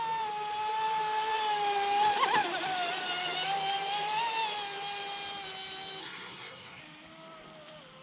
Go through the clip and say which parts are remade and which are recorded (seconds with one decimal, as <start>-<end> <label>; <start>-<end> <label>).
0.0-6.0 recorded; 6.0-6.8 remade; 6.8-8.0 recorded